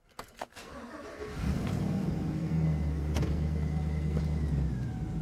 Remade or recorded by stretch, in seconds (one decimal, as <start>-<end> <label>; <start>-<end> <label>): 0.0-0.7 remade; 0.7-1.1 recorded; 1.1-4.2 remade; 4.2-5.2 recorded

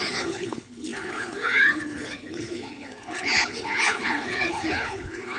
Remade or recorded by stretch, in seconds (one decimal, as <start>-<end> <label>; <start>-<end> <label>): 0.0-5.4 remade

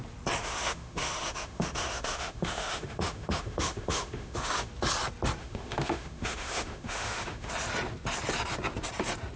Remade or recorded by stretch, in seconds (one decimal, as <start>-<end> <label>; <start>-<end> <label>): 0.0-0.4 recorded; 0.4-4.7 remade; 4.7-5.4 recorded; 5.4-7.5 remade; 7.5-9.4 recorded